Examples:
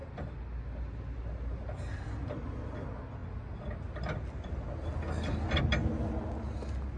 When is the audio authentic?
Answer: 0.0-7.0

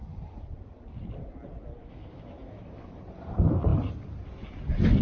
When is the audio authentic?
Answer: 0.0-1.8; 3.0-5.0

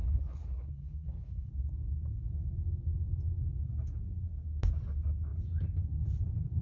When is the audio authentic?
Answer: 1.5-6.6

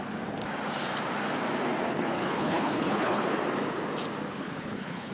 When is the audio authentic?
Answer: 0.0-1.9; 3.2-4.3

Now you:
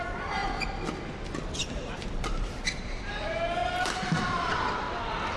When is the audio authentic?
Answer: 0.0-1.6; 3.1-3.6; 4.5-5.4